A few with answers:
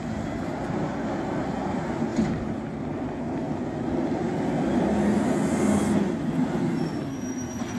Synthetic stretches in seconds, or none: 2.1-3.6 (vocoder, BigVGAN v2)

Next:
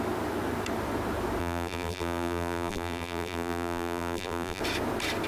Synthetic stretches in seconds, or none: 1.4-4.6 (vocoder, BigVGAN v2)

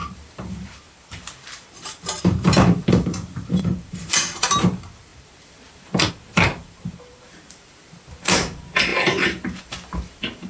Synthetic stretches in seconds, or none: 0.0-10.5 (vocoder, BigVGAN v2)

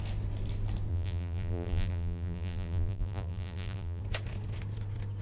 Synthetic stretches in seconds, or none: 0.9-4.0 (vocoder, BigVGAN v2)

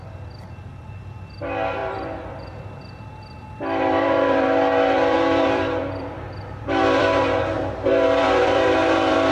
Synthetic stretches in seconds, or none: 0.0-9.3 (vocoder, BigVGAN v2)